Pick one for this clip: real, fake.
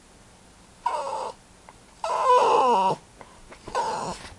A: real